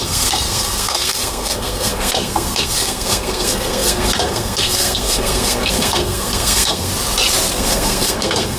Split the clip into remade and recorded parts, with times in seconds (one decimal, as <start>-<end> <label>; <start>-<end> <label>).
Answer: 0.0-6.9 remade; 6.9-7.5 recorded; 7.5-8.6 remade